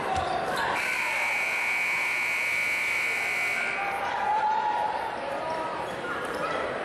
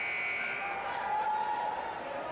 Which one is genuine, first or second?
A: second